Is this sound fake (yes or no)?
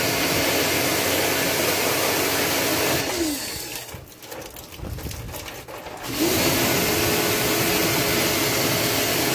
no